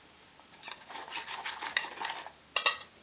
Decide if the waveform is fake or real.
real